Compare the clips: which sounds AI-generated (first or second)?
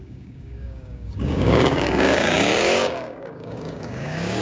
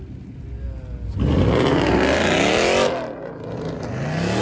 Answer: first